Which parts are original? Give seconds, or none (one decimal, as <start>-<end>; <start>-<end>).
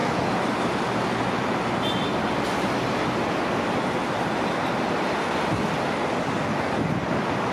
0.0-7.5